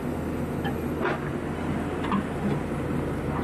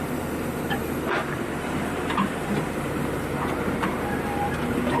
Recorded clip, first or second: first